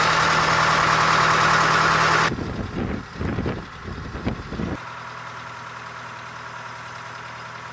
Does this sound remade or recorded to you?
recorded